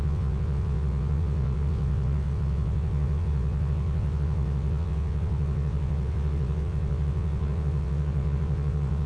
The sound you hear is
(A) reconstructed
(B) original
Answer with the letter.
A